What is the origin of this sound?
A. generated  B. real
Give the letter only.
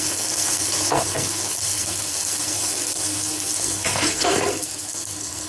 A